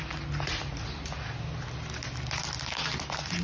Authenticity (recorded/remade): recorded